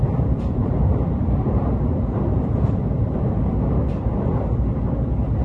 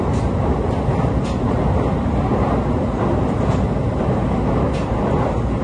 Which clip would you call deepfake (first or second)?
first